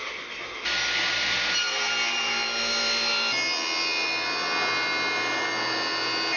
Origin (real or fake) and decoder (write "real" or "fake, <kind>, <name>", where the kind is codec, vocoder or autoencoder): real